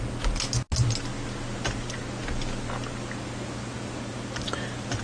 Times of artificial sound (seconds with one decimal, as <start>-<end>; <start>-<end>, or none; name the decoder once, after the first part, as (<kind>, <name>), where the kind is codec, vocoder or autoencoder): none

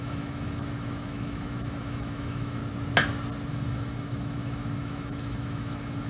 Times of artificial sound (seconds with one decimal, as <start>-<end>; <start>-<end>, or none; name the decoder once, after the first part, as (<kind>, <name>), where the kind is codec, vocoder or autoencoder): 0.0-2.6 (autoencoder, DAC-VAE); 3.5-6.1

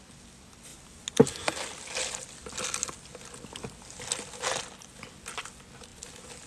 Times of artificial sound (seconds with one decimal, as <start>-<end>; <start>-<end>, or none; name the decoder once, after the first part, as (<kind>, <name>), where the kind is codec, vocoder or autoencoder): none

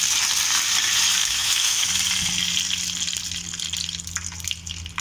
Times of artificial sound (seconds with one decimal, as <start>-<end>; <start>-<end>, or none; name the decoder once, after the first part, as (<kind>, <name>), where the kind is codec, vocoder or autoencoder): 1.2-1.9 (autoencoder, DAC-VAE)